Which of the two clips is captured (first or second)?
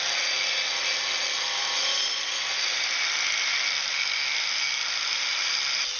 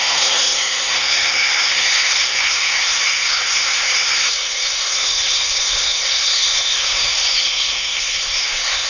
first